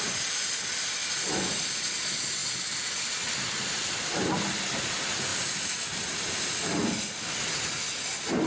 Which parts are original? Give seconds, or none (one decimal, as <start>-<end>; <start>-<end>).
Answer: 0.0-2.4; 4.8-5.3; 6.2-8.5